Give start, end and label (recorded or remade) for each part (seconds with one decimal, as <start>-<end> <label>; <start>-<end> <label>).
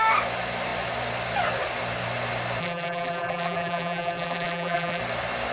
0.0-2.6 recorded; 2.6-5.0 remade; 5.0-5.5 recorded